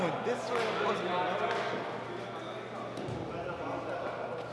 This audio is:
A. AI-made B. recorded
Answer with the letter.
B